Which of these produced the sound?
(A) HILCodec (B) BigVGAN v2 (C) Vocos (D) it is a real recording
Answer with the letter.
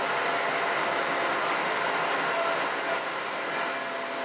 D